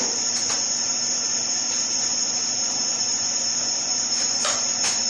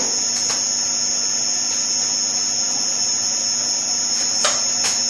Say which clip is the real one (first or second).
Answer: second